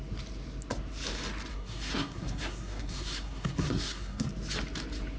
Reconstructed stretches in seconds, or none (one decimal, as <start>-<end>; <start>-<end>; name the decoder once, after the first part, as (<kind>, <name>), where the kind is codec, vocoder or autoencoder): 1.5-4.3 (codec, SNAC)